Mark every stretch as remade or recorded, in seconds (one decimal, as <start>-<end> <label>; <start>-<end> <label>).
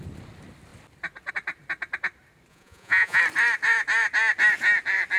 0.0-2.5 recorded; 2.5-3.2 remade; 3.2-5.2 recorded